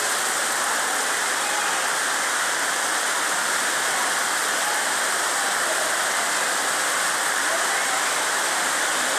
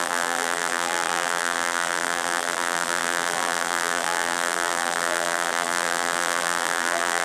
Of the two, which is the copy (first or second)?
second